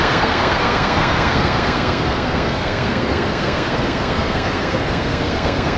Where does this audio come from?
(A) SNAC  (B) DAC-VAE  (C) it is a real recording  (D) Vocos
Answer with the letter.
A